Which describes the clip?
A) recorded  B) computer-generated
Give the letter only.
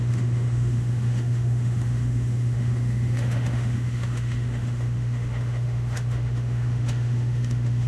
B